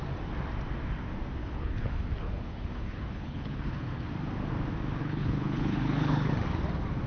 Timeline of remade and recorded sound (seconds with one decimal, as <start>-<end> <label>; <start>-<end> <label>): 0.0-1.4 recorded; 1.4-4.1 remade; 4.1-5.0 recorded; 5.0-6.3 remade; 6.3-7.1 recorded